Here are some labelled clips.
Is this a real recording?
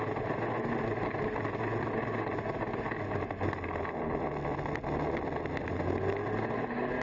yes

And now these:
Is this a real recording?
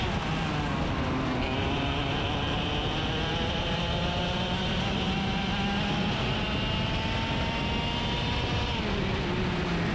yes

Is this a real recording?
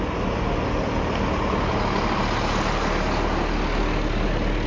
yes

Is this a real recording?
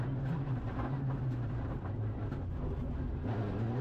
yes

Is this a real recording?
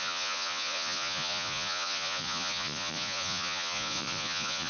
no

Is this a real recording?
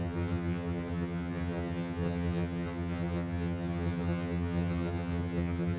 no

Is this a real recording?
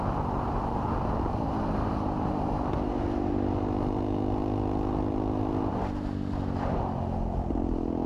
yes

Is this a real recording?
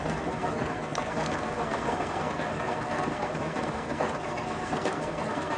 no